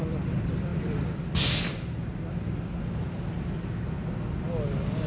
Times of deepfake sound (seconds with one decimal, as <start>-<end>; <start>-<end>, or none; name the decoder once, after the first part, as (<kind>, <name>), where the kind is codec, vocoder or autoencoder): none